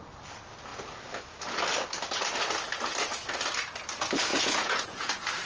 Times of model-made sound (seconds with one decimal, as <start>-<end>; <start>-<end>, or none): 4.3-5.1